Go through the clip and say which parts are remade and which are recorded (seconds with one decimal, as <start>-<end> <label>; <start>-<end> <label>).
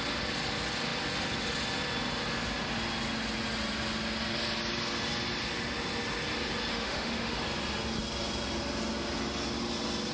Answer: 0.0-6.7 recorded; 6.7-7.4 remade; 7.4-10.1 recorded